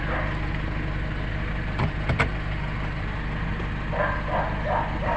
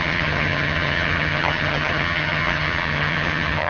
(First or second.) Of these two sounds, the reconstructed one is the second